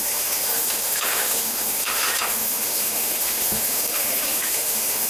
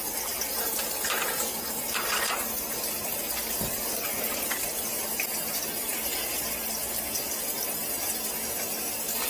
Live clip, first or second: second